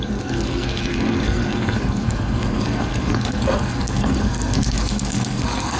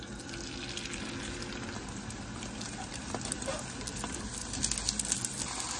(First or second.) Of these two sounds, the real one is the second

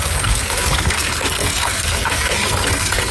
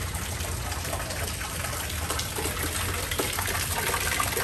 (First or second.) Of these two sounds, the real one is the second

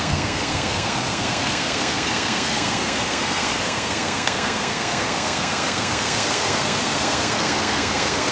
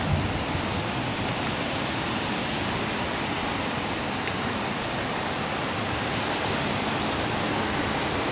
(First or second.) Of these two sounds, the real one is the second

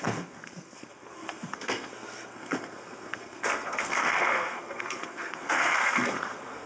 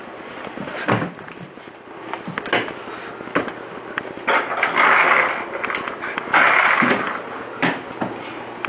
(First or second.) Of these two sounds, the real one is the second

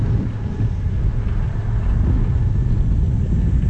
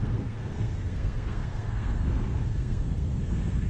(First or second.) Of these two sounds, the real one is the first